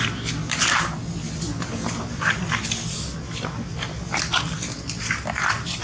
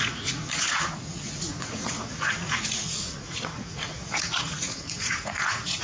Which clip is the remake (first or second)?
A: second